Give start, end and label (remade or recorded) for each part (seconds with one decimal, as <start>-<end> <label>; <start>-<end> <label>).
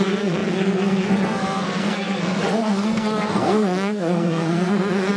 0.0-5.2 remade